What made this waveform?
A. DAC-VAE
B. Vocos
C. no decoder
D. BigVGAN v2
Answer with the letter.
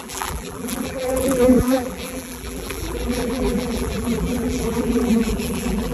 D